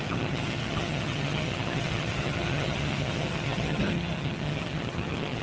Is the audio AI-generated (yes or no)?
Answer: yes